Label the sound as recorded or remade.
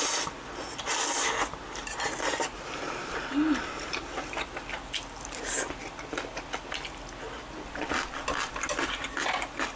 recorded